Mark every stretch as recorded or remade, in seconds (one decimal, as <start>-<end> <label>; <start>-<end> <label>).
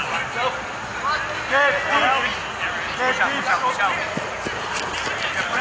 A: 0.0-5.6 recorded